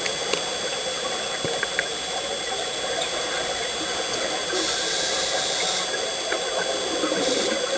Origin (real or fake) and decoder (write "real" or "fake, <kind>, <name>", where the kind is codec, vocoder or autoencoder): real